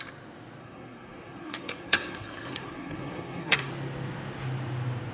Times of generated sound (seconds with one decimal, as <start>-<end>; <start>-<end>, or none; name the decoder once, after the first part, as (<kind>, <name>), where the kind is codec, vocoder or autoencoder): 0.6-3.7 (codec, SNAC)